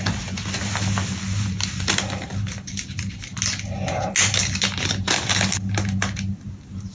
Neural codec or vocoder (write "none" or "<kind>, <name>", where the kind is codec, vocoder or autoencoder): none